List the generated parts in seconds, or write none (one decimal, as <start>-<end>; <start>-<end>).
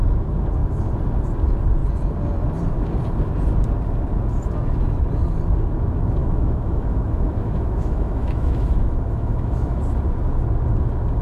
6.2-9.8